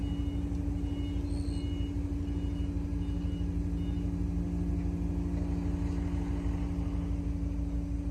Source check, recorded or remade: recorded